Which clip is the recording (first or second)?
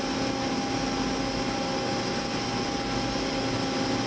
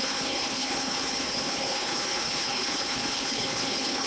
first